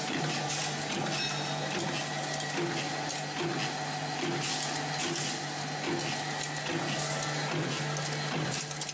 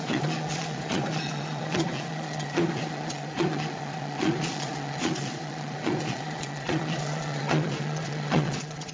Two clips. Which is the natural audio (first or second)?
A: first